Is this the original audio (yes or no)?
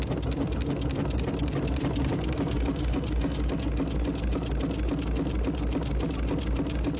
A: yes